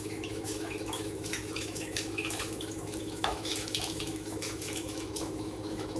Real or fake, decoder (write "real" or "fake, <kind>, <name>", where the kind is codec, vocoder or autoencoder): fake, autoencoder, DAC-VAE